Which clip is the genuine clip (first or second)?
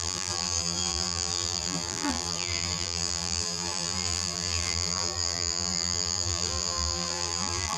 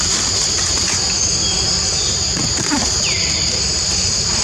second